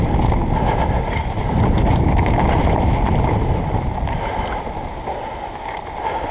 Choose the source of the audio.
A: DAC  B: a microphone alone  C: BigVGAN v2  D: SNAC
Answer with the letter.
B